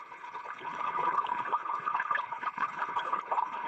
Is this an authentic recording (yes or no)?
no